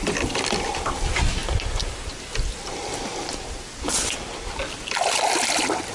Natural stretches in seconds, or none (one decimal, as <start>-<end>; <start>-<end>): 0.0-5.9